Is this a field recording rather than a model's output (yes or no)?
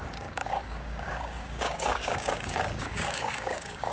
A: no